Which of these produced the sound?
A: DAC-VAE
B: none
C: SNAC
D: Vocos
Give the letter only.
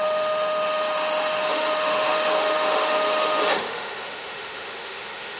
A